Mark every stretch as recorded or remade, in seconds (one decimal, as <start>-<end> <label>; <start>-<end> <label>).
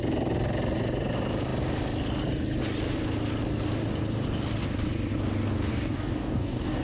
0.0-5.7 recorded; 5.7-6.8 remade